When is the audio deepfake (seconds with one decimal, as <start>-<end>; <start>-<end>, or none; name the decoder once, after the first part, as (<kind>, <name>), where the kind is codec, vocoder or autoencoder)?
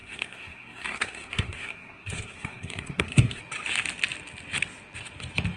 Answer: 0.0-3.4 (codec, SNAC)